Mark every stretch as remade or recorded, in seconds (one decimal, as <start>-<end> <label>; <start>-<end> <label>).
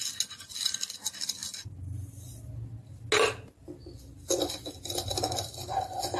0.0-6.2 recorded